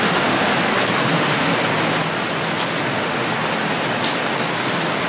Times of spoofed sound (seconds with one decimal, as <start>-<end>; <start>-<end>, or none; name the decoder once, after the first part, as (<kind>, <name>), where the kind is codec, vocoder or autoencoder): 0.0-0.5 (autoencoder, DAC-VAE); 1.1-1.5; 2.8-3.4; 4.6-5.1